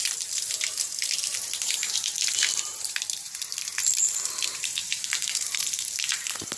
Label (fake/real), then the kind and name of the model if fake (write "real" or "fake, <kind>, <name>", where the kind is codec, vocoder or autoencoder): fake, vocoder, BigVGAN v2